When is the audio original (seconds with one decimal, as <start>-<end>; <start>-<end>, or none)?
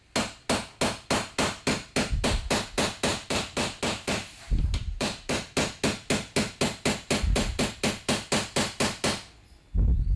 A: 0.0-3.1; 5.4-10.2